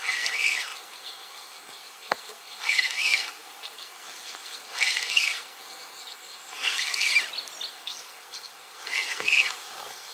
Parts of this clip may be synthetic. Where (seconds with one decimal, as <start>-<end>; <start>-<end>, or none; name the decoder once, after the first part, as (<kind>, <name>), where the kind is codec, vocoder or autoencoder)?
0.0-7.1 (codec, SNAC); 7.7-10.1